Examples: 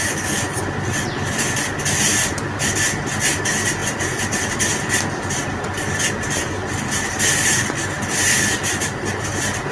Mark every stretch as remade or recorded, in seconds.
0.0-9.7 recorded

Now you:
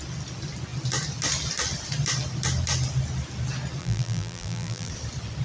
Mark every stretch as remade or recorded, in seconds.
0.0-3.8 recorded; 3.8-4.9 remade; 4.9-5.4 recorded

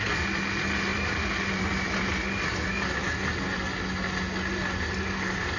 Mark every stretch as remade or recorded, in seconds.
0.0-0.9 recorded; 0.9-2.0 remade; 2.0-5.6 recorded

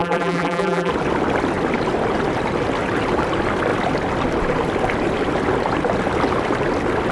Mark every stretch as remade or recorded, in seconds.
0.0-0.9 remade; 0.9-7.1 recorded

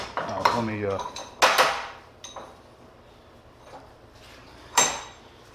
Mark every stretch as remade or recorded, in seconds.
0.0-1.2 remade; 1.2-4.5 recorded; 4.5-5.5 remade